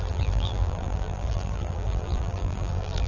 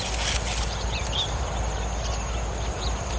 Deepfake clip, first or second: first